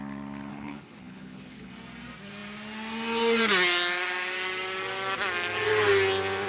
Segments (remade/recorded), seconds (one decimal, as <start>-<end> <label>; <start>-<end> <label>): 0.0-0.5 recorded; 0.5-1.7 remade; 1.7-6.5 recorded